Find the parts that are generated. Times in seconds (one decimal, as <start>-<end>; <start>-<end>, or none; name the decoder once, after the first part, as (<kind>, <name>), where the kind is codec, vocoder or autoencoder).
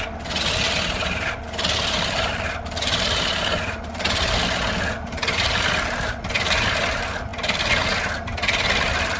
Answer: none